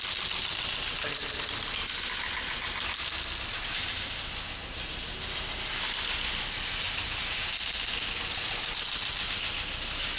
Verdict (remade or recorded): recorded